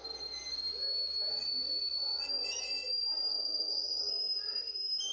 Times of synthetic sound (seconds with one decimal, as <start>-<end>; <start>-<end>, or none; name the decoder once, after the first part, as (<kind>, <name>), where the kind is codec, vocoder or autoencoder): 3.3-4.1 (codec, SNAC)